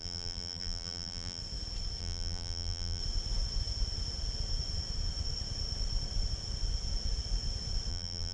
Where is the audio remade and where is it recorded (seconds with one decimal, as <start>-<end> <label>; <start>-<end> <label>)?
0.0-1.4 remade; 1.4-2.0 recorded; 2.0-3.0 remade; 3.0-7.9 recorded; 7.9-8.3 remade